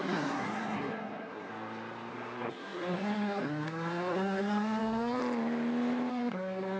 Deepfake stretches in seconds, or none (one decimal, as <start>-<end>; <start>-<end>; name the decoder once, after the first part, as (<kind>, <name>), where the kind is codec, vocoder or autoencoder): 0.0-1.5 (codec, SNAC); 2.1-5.2; 6.1-6.8